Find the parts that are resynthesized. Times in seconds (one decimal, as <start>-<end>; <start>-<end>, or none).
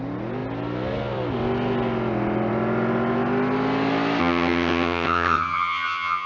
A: 4.2-6.3